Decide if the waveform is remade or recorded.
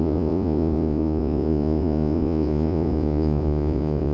remade